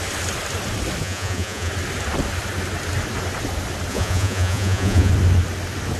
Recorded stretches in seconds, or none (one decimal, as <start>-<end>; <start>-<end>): 0.0-1.0; 1.7-3.9; 5.1-6.0